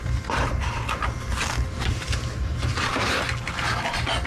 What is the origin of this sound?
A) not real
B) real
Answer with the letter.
B